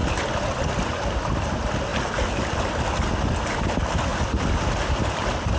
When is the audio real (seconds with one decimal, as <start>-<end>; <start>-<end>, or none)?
0.0-5.6